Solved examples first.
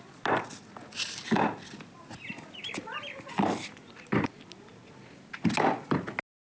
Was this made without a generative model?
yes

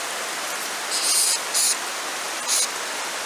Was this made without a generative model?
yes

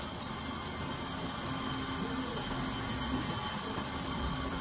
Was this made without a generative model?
yes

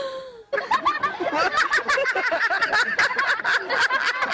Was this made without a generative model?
yes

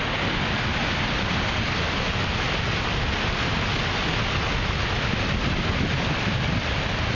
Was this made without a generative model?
yes